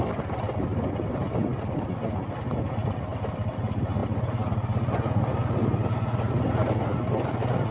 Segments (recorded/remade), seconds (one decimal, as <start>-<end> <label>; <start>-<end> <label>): 0.0-7.7 recorded